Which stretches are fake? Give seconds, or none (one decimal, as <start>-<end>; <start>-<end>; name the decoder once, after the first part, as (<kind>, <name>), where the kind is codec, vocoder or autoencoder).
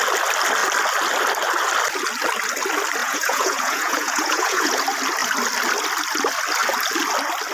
3.0-4.8 (vocoder, Vocos)